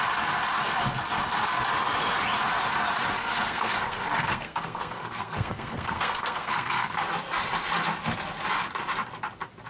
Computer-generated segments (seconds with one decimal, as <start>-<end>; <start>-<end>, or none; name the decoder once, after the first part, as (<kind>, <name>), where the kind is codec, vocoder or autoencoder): 3.2-7.0 (codec, SNAC)